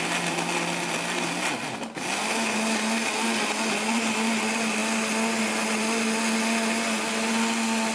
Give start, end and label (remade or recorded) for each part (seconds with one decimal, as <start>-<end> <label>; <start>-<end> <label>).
0.0-7.9 recorded